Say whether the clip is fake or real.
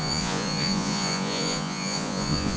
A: fake